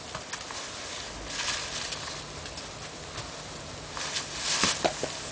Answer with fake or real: real